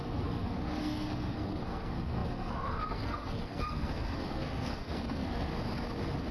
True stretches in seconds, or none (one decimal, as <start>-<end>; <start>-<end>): 5.5-6.3